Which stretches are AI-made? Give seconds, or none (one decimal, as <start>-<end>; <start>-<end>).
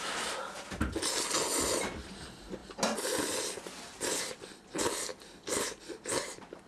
none